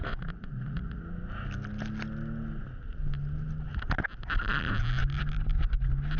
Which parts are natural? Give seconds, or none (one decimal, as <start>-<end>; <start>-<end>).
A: 1.0-6.2

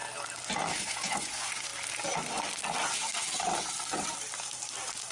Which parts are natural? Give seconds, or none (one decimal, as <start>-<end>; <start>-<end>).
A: 0.0-0.8; 1.7-5.1

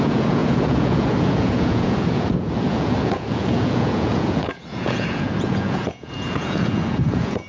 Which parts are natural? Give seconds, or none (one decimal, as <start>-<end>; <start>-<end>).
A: none